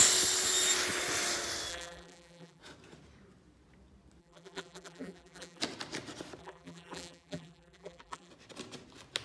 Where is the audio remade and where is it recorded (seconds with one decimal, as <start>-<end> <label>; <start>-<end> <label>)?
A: 0.0-1.7 recorded; 1.7-2.6 remade; 2.6-4.2 recorded; 4.2-5.6 remade; 5.6-6.4 recorded; 6.4-8.3 remade; 8.3-9.2 recorded